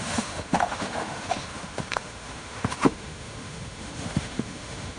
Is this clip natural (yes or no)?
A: no